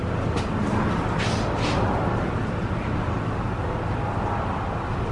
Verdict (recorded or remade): recorded